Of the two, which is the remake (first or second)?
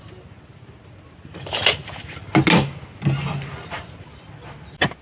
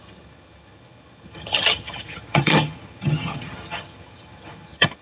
second